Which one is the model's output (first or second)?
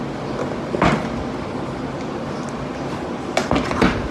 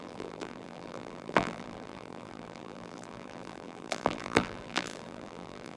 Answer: second